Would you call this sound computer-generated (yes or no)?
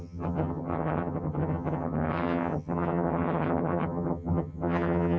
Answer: yes